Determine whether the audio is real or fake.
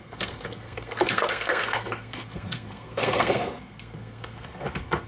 fake